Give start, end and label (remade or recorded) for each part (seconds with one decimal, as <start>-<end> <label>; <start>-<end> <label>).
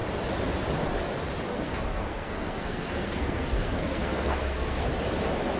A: 0.0-1.5 recorded; 1.5-4.9 remade; 4.9-5.6 recorded